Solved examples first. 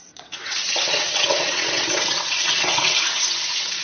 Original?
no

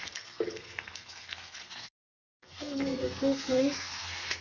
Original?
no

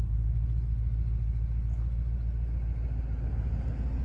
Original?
yes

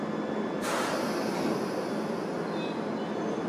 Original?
yes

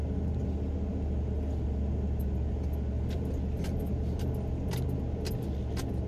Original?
yes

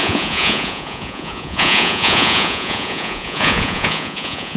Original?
no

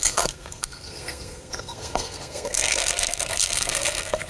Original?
no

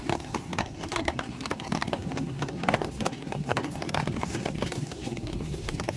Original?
no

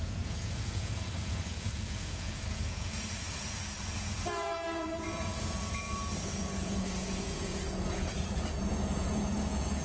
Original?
no